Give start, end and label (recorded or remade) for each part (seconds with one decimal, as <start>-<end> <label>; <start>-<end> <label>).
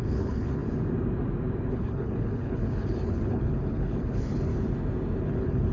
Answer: 0.0-0.6 remade; 0.6-1.7 recorded; 1.7-4.5 remade; 4.5-5.2 recorded; 5.2-5.7 remade